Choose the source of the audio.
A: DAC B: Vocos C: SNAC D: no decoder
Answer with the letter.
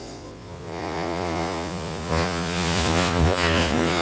B